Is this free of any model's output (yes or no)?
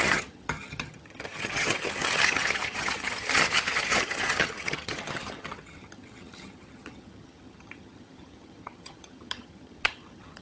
no